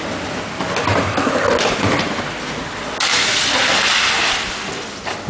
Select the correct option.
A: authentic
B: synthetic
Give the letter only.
A